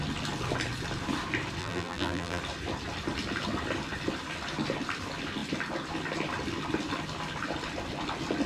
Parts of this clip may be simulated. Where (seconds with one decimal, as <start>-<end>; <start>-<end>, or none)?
1.6-2.4